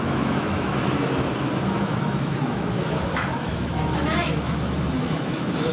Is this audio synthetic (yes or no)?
yes